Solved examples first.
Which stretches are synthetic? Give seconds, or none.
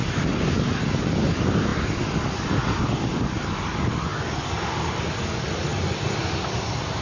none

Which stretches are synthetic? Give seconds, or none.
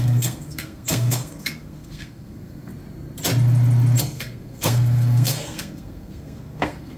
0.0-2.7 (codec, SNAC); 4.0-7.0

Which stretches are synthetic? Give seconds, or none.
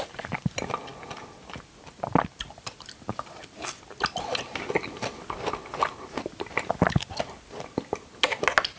none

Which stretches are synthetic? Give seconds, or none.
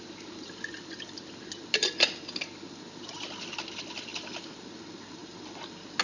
none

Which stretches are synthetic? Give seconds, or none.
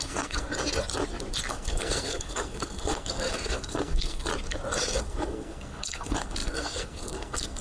0.0-0.5 (codec, SNAC); 1.5-4.3; 5.0-7.6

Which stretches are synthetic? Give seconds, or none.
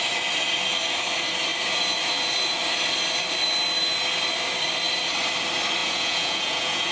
5.8-6.9 (vocoder, Vocos)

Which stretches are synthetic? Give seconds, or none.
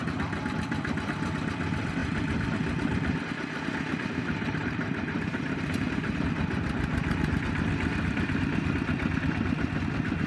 3.9-6.2 (vocoder, BigVGAN v2)